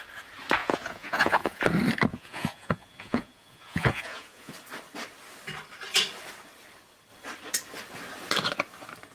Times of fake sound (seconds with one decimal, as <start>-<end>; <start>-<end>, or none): 0.6-1.6; 2.1-4.5